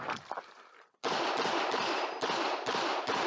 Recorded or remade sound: recorded